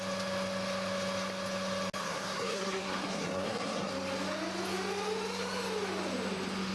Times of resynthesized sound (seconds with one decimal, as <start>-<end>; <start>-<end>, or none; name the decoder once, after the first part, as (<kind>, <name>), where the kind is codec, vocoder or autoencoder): 2.0-3.9 (codec, SNAC)